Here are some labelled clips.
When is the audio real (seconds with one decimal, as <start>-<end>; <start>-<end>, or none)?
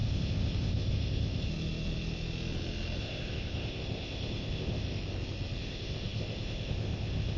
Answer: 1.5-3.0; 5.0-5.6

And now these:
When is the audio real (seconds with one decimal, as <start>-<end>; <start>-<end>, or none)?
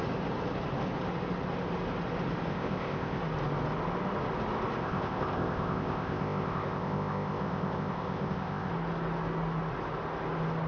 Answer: 0.0-2.5; 3.2-4.8; 8.7-10.7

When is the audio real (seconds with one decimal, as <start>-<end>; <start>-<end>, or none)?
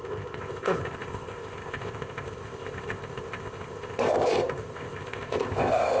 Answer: none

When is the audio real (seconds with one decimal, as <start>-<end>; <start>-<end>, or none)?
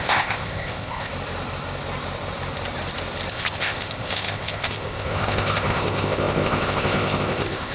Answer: 1.1-3.3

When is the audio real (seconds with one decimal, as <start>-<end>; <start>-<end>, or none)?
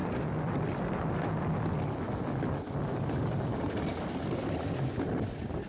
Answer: 0.0-5.7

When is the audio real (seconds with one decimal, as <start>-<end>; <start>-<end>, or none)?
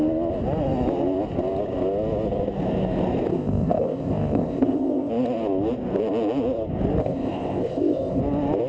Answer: 0.0-3.3; 5.1-7.0; 8.2-8.7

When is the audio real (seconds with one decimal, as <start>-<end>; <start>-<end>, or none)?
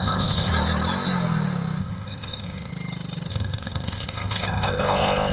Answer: 0.5-1.8; 2.7-3.3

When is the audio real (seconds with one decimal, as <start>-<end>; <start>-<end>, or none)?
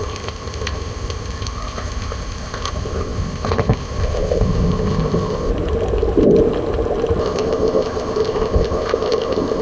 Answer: 5.5-7.2